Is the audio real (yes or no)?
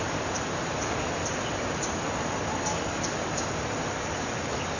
yes